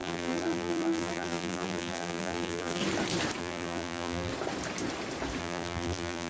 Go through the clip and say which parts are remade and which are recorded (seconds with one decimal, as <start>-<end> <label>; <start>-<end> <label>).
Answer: 0.0-2.8 remade; 2.8-3.4 recorded; 3.4-4.3 remade; 4.3-5.4 recorded; 5.4-6.3 remade